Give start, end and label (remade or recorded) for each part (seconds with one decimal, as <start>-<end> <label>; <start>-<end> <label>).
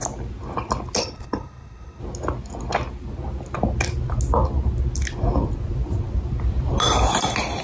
0.0-1.0 recorded; 1.0-2.0 remade; 2.0-7.6 recorded